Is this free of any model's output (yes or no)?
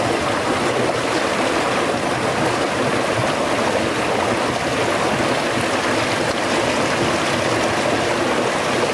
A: yes